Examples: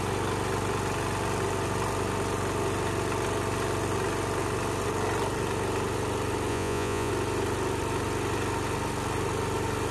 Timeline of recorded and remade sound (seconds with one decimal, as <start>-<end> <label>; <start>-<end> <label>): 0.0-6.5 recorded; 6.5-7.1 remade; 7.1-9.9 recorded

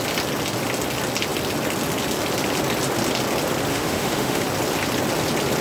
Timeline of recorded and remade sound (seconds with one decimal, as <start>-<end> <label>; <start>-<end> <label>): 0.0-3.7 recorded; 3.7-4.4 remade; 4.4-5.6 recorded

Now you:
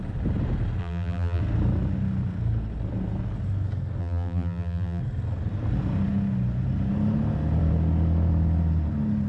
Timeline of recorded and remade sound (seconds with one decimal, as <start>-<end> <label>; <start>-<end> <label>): 0.0-0.8 recorded; 0.8-1.4 remade; 1.4-4.0 recorded; 4.0-5.0 remade; 5.0-9.3 recorded

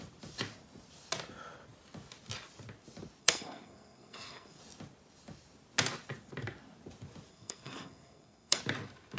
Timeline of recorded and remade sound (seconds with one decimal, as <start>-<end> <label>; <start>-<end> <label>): 0.0-3.2 recorded; 3.2-4.6 remade; 4.6-7.3 recorded; 7.3-8.6 remade; 8.6-9.2 recorded

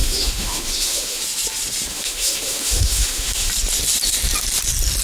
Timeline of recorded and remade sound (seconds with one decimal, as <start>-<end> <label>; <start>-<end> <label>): 0.0-1.2 remade; 1.2-1.9 recorded; 1.9-3.5 remade; 3.5-5.0 recorded

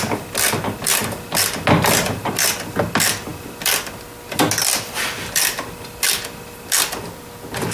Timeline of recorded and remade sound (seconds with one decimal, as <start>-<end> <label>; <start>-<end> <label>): 0.0-7.7 recorded